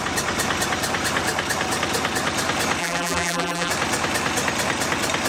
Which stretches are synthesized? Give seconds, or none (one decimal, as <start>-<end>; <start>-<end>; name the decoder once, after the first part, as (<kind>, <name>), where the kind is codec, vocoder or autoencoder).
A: 2.8-3.7 (vocoder, BigVGAN v2)